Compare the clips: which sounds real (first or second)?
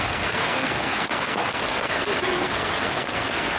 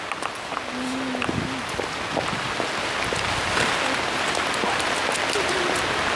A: second